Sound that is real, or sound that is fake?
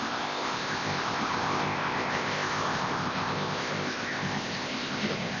fake